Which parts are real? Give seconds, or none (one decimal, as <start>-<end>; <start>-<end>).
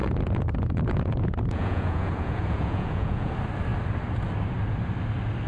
3.3-5.5